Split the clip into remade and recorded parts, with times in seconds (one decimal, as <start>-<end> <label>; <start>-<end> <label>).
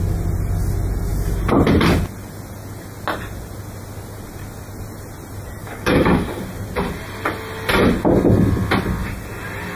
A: 0.0-5.6 recorded; 5.6-6.4 remade; 6.4-9.8 recorded